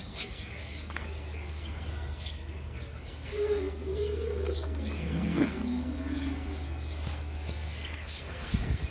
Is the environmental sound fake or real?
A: fake